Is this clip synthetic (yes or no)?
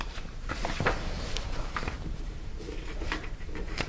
yes